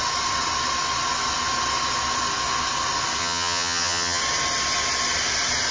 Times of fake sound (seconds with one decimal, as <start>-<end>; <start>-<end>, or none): 3.2-4.2